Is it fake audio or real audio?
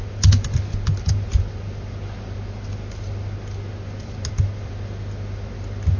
real